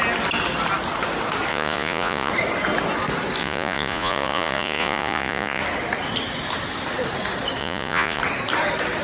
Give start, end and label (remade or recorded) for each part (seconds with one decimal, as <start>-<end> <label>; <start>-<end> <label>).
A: 0.0-1.5 recorded; 1.5-2.3 remade; 2.3-3.4 recorded; 3.4-5.6 remade; 5.6-7.6 recorded; 7.6-8.2 remade; 8.2-9.0 recorded